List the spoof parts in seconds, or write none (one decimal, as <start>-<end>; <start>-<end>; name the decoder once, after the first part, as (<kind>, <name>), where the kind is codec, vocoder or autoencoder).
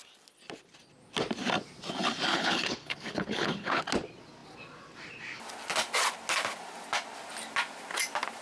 2.3-3.8 (codec, HILCodec)